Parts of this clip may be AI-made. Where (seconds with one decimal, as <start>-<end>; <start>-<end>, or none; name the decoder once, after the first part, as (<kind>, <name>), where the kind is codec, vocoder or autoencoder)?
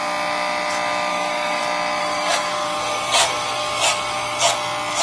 1.1-1.6 (codec, DAC); 2.0-4.5